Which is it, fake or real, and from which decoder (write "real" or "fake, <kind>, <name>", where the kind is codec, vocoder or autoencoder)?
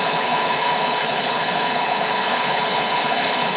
fake, codec, HILCodec